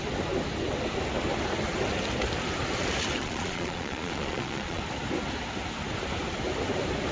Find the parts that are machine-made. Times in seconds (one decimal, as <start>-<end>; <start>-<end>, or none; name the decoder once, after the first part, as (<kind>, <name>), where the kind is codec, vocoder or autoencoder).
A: 3.2-4.8 (vocoder, Vocos)